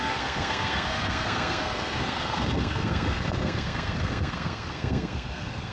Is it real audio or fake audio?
fake